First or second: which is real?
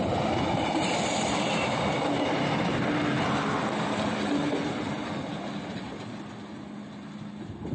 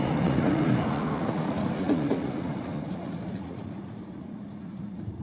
first